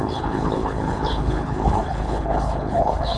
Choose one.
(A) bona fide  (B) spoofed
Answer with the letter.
B